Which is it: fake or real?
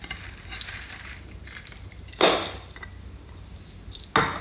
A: real